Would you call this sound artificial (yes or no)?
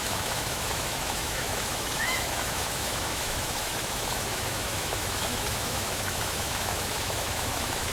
yes